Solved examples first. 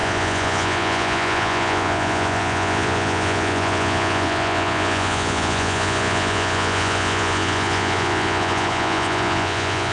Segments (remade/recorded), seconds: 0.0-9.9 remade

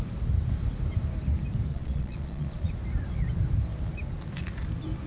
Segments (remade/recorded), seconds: 0.0-1.7 recorded; 1.7-2.7 remade; 2.7-5.1 recorded

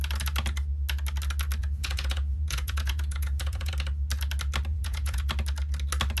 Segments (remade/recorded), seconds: 0.0-1.6 recorded; 1.6-3.7 remade; 3.7-4.7 recorded; 4.7-5.2 remade; 5.2-6.2 recorded

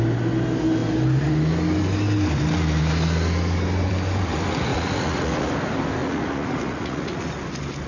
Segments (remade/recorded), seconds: 0.0-4.7 recorded; 4.7-5.5 remade; 5.5-6.0 recorded; 6.0-7.3 remade; 7.3-7.9 recorded

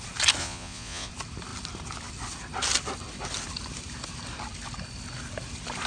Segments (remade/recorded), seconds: 0.0-0.4 recorded; 0.4-1.1 remade; 1.1-5.9 recorded

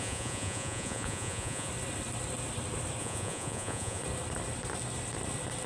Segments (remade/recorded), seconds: 0.0-1.7 remade; 1.7-3.0 recorded; 3.0-4.0 remade; 4.0-5.7 recorded